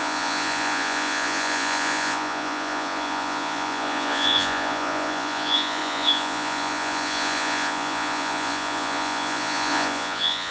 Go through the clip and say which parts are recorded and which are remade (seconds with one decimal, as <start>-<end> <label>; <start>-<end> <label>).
0.0-10.5 remade